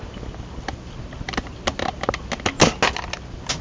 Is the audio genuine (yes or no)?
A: yes